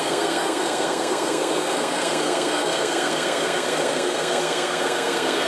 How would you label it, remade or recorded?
remade